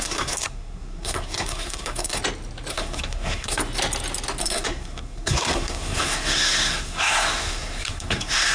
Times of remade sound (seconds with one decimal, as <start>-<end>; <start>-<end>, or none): 0.0-2.2; 2.7-3.6; 4.4-8.5